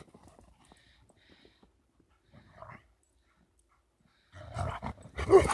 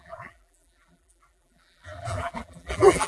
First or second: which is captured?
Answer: first